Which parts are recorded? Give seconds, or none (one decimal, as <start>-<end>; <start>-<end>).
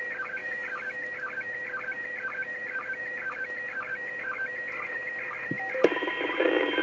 0.0-6.8